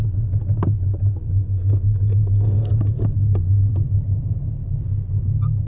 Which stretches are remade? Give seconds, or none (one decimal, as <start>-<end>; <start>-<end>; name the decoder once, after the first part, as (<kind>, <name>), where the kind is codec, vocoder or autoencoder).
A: 1.2-2.7 (codec, SNAC)